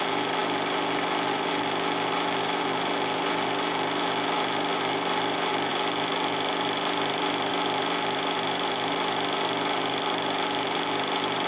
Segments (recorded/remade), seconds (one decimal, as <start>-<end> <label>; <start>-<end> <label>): 0.0-11.5 recorded